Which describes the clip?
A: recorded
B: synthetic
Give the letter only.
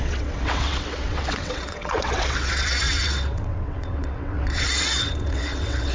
B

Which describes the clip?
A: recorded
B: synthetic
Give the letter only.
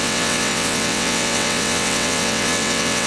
B